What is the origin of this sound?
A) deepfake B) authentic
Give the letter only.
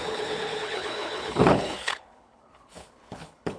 A